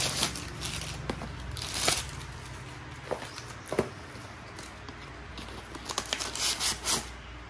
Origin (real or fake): real